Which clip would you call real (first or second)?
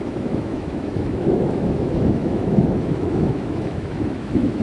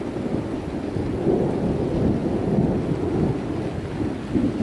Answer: second